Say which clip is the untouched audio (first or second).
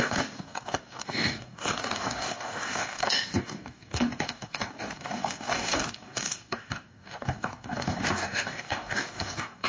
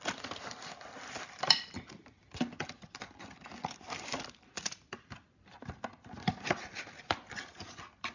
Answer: second